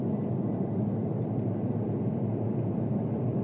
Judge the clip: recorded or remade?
recorded